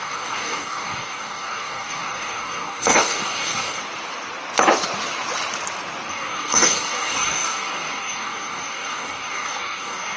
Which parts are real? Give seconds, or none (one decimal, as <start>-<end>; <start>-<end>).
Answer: 3.8-6.1